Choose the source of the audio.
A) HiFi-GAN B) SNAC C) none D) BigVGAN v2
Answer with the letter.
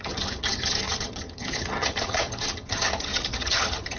A